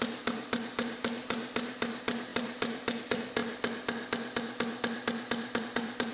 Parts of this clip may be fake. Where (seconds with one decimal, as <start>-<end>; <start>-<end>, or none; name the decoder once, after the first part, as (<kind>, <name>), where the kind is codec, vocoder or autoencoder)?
0.0-3.4 (vocoder, BigVGAN v2); 5.6-6.1